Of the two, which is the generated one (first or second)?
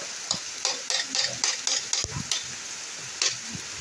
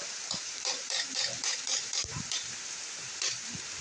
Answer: second